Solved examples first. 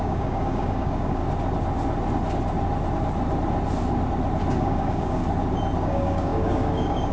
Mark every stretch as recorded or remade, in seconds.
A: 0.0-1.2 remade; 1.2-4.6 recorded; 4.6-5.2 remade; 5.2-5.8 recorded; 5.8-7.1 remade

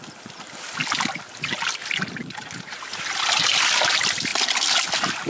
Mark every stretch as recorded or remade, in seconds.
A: 0.0-5.3 recorded

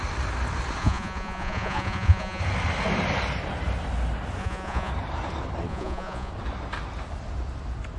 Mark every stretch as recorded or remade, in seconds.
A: 0.0-0.8 recorded; 0.8-2.4 remade; 2.4-4.4 recorded; 4.4-4.9 remade; 4.9-5.7 recorded; 5.7-6.3 remade; 6.3-8.0 recorded